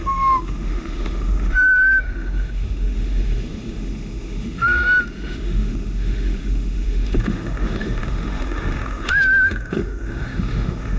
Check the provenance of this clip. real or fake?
fake